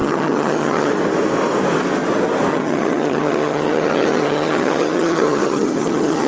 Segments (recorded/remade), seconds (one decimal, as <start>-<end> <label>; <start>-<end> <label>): 0.0-0.9 remade; 0.9-2.5 recorded; 2.5-6.3 remade